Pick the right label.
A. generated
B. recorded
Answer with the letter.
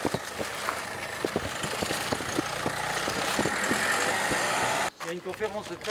B